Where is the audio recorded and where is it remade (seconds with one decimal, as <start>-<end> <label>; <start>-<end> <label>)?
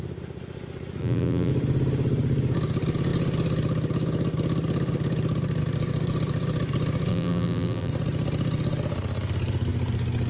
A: 0.0-1.0 recorded; 1.0-1.5 remade; 1.5-7.1 recorded; 7.1-7.9 remade; 7.9-10.3 recorded